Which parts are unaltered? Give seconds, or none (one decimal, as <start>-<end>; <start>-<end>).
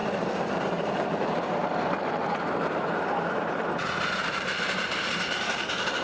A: 1.6-2.7